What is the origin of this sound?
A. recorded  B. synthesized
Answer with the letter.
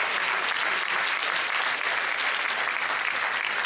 A